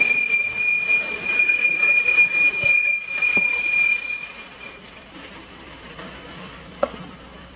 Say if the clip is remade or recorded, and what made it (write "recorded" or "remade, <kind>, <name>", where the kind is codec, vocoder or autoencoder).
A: remade, vocoder, BigVGAN v2